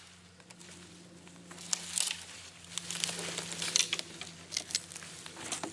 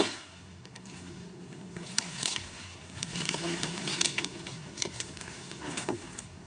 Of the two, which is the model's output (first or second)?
second